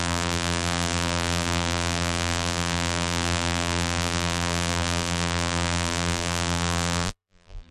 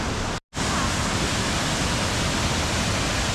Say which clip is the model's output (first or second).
first